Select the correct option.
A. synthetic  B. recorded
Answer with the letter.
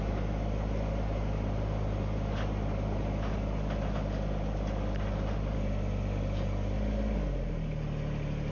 B